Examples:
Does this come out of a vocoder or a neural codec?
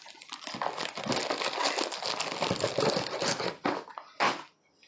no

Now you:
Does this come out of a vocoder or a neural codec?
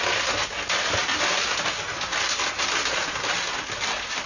no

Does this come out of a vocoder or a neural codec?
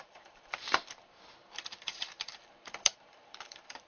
yes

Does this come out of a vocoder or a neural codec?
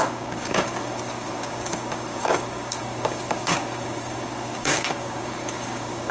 yes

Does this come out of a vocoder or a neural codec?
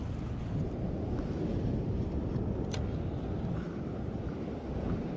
no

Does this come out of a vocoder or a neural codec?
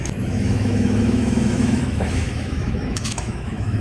yes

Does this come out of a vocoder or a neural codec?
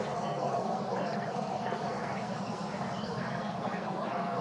yes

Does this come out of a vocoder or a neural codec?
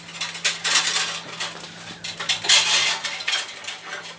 no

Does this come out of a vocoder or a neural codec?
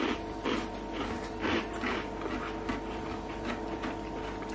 no